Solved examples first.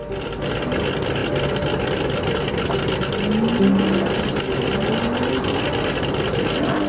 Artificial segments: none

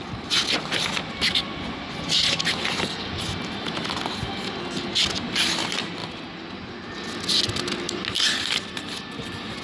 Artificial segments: 1.5-2.1 (vocoder, Vocos)

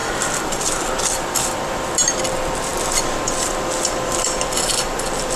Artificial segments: 0.0-5.4 (vocoder, BigVGAN v2)

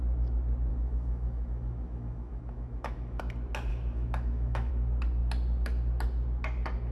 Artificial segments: 0.7-3.2 (autoencoder, DAC-VAE); 3.7-4.7

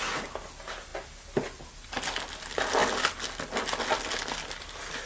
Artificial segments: none